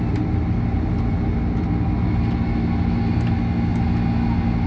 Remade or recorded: recorded